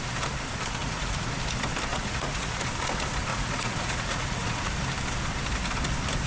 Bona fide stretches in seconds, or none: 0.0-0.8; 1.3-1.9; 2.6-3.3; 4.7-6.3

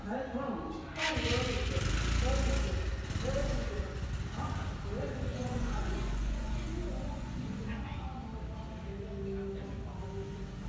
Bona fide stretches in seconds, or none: 0.0-3.4; 4.1-5.3; 8.2-10.7

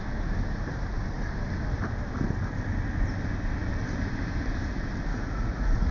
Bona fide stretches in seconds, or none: 0.0-5.1

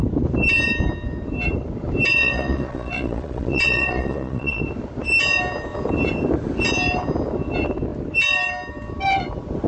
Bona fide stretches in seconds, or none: 0.0-2.2; 4.6-9.7

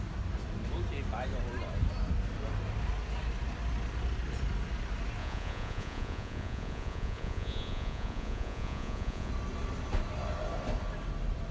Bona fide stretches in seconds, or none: 0.0-5.2; 9.3-11.5

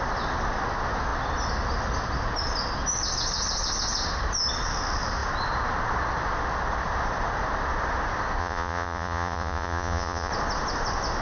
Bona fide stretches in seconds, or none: 0.0-8.4; 10.3-11.2

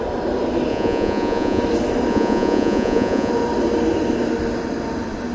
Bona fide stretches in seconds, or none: 0.0-0.7; 1.6-2.1; 3.3-5.3

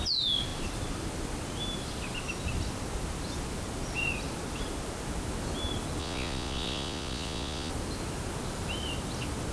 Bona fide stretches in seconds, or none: 0.0-6.0; 7.7-9.5